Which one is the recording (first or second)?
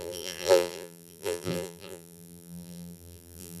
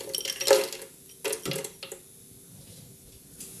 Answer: second